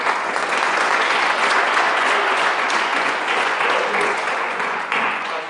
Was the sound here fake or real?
fake